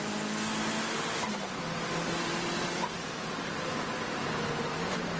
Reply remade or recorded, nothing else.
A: recorded